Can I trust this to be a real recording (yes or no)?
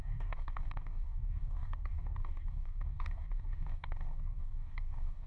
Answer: no